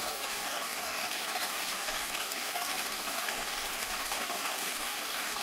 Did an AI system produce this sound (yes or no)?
yes